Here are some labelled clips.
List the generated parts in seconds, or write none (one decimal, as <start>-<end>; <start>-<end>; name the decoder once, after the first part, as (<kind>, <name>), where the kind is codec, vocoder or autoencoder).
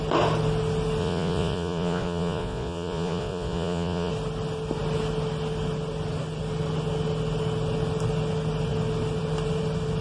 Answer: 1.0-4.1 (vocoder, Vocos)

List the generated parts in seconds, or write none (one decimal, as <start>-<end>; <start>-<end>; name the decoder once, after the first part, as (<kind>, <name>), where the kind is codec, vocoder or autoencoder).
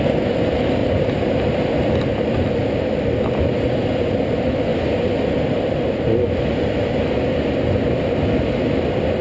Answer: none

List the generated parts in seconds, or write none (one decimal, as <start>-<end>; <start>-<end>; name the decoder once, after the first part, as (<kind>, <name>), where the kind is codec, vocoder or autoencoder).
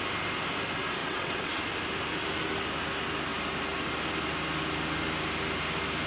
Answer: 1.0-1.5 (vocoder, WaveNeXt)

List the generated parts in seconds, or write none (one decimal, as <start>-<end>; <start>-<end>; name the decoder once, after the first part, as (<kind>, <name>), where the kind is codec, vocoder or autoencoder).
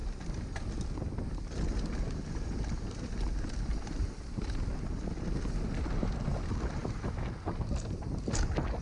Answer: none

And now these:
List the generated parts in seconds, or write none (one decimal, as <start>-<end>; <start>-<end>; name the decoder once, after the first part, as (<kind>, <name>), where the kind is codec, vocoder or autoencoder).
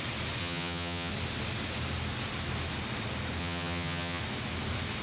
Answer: 0.4-1.1 (vocoder, HiFi-GAN); 3.4-4.2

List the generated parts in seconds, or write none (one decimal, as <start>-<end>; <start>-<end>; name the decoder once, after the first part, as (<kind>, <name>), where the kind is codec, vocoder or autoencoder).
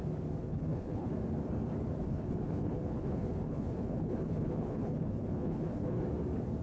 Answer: 0.4-1.1 (codec, HILCodec); 2.0-6.0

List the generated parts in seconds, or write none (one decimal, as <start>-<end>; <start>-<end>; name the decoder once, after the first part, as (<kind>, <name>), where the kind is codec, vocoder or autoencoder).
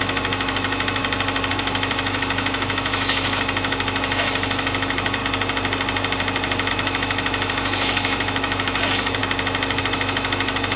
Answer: 0.0-1.0 (autoencoder, DAC-VAE); 1.5-5.2; 6.7-9.2; 9.8-10.8